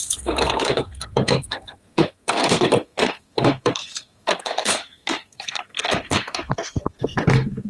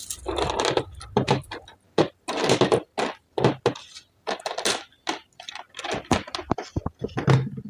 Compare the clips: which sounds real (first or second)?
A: second